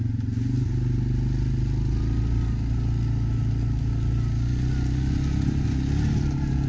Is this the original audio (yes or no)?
yes